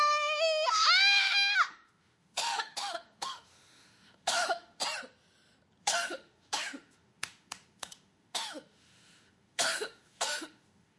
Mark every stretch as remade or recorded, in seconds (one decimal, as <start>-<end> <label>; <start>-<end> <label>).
0.0-4.8 remade; 4.8-5.8 recorded; 5.8-11.0 remade